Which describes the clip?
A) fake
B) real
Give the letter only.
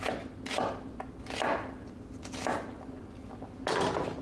B